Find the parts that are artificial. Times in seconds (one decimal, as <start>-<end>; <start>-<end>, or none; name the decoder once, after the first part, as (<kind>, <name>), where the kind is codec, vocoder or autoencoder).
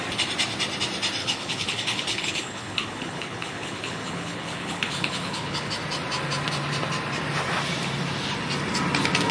1.2-5.7 (codec, HILCodec)